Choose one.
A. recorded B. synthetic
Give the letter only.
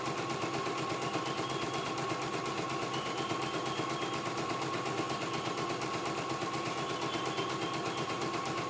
A